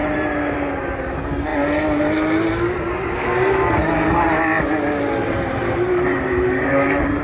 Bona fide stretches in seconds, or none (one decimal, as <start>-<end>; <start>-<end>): 0.8-5.2